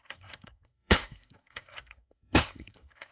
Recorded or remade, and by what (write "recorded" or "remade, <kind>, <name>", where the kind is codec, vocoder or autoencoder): remade, codec, SNAC